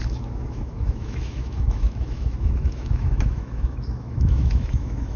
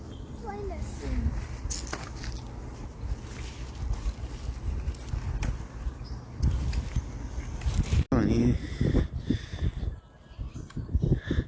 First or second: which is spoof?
first